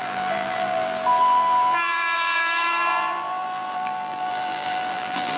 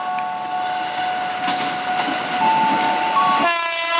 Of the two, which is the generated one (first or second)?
first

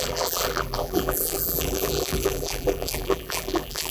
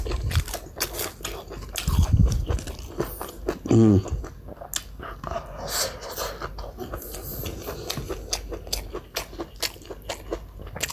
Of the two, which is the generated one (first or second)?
first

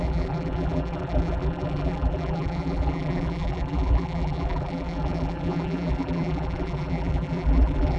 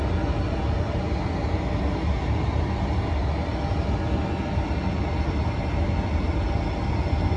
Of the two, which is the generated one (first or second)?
first